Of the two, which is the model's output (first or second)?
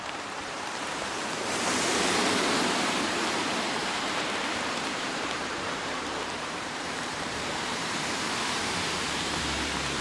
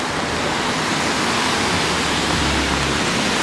first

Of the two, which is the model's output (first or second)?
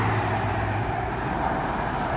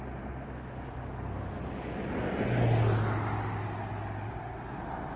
first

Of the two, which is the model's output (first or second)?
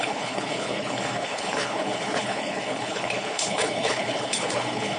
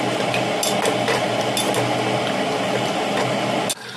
first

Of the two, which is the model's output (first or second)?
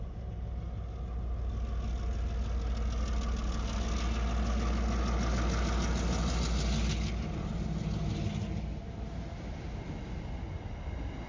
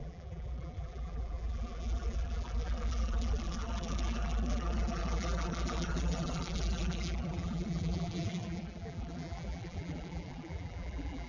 second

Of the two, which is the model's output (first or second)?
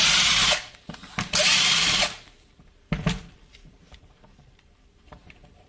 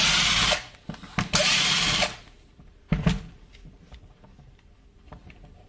first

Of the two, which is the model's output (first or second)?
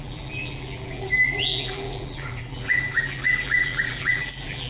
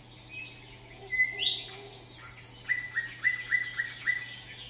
first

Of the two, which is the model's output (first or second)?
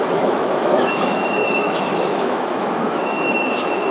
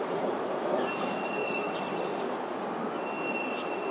first